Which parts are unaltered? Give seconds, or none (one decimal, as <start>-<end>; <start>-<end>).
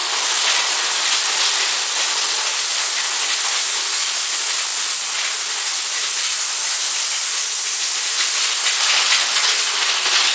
0.0-10.3